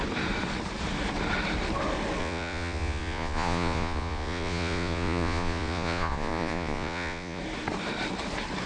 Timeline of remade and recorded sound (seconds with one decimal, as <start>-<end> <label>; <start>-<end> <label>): 0.0-2.2 recorded; 2.2-7.4 remade; 7.4-8.7 recorded